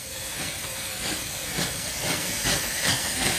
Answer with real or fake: fake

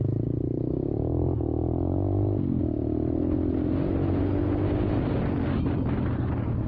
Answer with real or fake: real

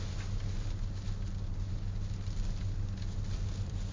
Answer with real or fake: real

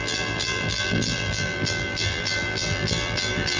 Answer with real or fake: fake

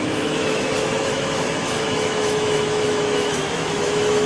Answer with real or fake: fake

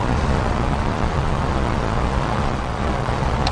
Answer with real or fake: fake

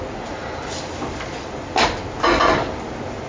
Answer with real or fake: real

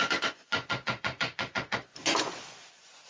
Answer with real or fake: fake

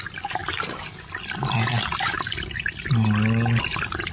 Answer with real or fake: real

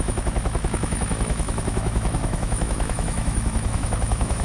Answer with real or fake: fake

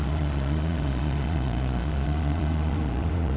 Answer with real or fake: fake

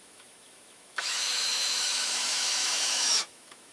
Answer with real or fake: fake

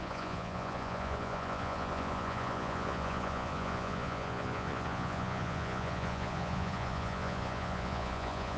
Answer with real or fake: fake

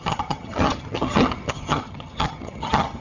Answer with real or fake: fake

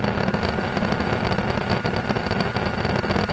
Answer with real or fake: real